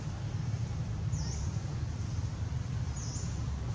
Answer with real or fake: real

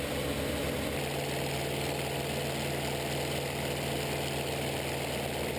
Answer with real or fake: real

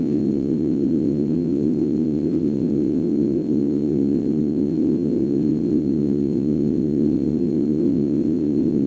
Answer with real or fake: fake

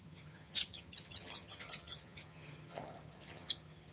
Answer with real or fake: fake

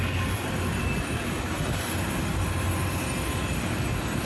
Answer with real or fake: real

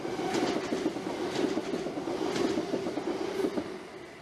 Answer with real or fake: real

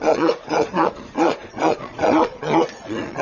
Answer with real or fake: fake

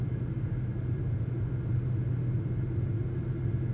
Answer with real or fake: real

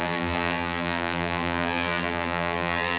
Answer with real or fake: fake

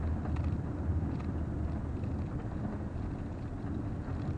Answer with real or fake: real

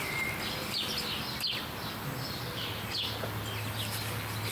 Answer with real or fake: real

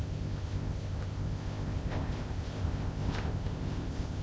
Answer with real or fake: fake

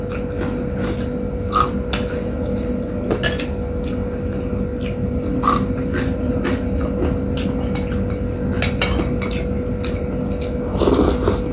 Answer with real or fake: real